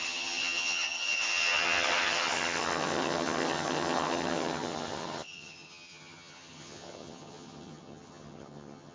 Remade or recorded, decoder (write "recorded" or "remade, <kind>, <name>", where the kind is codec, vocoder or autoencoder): remade, vocoder, HiFi-GAN